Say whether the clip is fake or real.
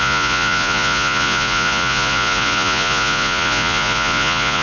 fake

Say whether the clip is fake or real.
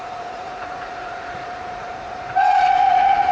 fake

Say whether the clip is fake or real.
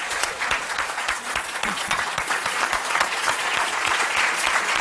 fake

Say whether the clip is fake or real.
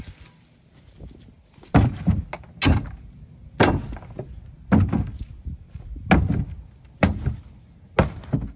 real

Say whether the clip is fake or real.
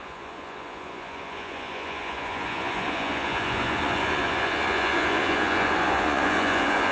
fake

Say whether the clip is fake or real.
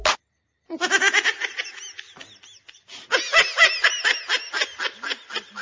real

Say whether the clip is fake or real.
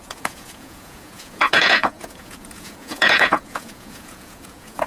fake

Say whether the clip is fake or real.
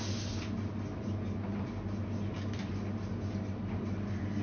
real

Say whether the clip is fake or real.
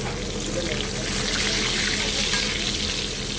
real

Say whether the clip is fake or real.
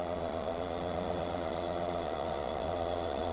fake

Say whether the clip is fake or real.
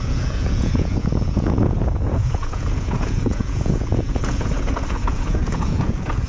fake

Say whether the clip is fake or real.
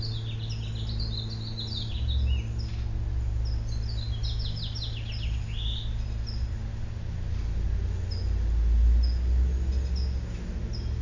real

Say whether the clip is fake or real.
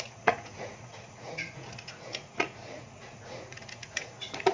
fake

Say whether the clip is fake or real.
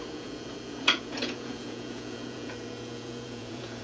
fake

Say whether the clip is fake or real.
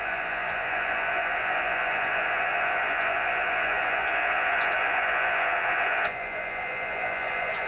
fake